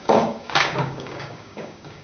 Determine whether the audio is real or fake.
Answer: fake